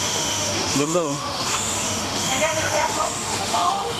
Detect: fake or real fake